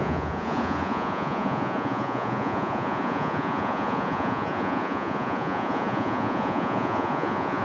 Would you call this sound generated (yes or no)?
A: yes